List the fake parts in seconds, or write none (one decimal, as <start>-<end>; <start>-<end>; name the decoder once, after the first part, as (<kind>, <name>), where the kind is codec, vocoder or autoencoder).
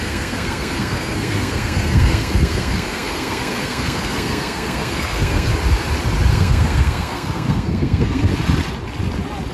0.0-5.5 (codec, SNAC); 6.3-8.3